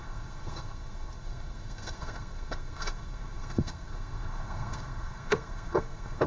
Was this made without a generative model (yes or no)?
no